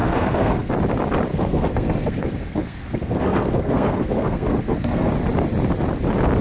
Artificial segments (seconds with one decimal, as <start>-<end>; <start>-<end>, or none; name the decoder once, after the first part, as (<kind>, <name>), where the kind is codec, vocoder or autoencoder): 0.0-0.7 (codec, SNAC); 1.3-5.1